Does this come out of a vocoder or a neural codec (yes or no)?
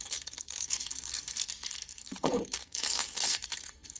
yes